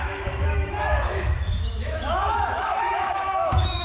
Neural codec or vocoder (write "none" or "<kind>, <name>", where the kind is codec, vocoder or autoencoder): autoencoder, DAC-VAE